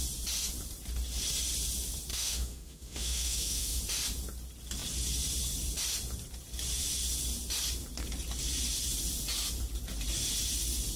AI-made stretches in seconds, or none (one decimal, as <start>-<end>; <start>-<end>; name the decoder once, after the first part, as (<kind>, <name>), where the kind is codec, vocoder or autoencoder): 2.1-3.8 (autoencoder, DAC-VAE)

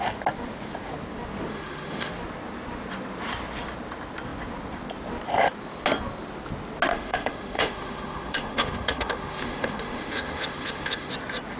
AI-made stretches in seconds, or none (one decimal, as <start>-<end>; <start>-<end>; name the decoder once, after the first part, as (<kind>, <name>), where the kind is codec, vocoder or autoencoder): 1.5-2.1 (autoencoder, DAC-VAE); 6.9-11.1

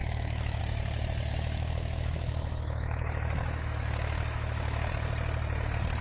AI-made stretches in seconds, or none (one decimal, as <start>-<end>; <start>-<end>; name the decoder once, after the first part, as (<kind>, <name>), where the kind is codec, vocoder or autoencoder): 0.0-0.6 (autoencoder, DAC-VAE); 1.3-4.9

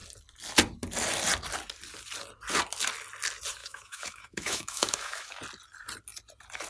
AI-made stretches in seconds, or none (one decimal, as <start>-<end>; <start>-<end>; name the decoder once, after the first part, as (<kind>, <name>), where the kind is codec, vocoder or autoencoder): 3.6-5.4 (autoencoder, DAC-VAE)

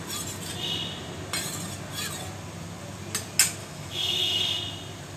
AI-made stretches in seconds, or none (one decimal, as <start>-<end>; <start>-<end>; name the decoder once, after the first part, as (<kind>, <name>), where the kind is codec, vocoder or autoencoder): 3.6-4.6 (autoencoder, DAC-VAE)

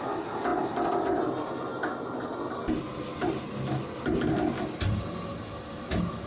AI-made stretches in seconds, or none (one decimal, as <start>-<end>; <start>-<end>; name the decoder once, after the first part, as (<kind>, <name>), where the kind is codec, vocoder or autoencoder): none

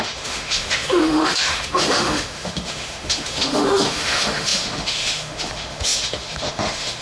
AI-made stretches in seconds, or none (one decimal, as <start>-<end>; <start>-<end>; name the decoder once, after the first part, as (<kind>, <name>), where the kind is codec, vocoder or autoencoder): 0.0-7.0 (autoencoder, DAC-VAE)